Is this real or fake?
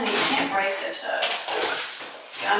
real